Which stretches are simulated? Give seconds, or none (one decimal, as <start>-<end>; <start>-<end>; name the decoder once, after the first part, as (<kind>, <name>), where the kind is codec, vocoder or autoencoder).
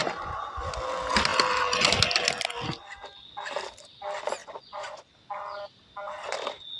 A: 0.0-0.7 (vocoder, Vocos); 4.4-5.0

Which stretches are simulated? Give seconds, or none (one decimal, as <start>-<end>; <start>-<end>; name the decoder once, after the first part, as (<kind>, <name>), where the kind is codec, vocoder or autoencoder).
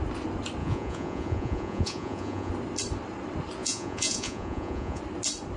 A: 0.6-2.5 (vocoder, Vocos); 3.6-5.0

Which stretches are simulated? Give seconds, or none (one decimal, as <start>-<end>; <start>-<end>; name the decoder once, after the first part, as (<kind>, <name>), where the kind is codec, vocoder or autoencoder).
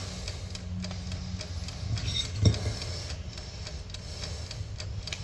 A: none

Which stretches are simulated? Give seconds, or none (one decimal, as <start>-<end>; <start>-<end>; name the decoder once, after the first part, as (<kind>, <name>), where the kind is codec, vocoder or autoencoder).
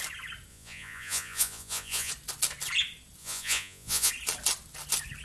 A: 0.5-2.1 (vocoder, Vocos); 3.2-4.1